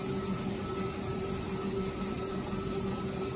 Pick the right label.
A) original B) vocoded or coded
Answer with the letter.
A